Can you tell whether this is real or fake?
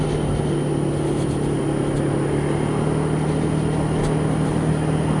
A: real